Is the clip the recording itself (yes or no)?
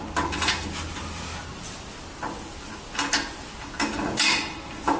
yes